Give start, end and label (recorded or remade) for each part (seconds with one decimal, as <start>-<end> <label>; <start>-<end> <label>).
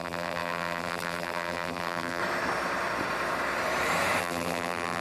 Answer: 0.0-2.2 remade; 2.2-4.2 recorded; 4.2-5.0 remade